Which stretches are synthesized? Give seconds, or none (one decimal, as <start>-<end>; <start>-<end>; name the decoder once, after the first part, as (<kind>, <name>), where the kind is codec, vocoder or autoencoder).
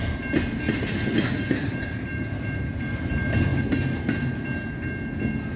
none